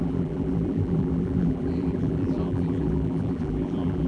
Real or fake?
fake